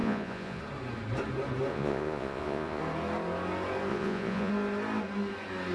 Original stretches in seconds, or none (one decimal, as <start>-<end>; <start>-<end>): 0.6-1.7; 2.8-3.9; 4.5-5.7